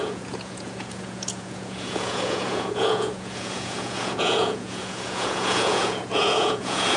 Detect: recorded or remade remade